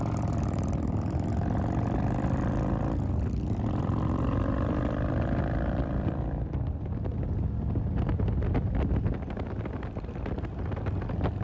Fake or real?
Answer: real